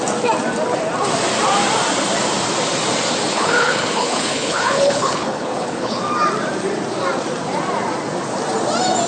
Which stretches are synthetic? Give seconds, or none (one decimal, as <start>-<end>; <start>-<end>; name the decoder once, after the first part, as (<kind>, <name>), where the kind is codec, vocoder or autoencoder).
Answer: 3.3-6.0 (codec, HILCodec)